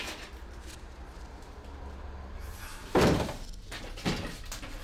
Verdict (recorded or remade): recorded